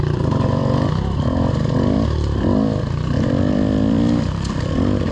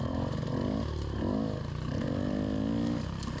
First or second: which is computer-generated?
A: first